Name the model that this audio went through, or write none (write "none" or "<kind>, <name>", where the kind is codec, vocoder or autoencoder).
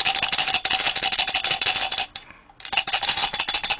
none